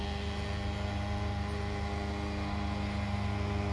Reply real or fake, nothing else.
real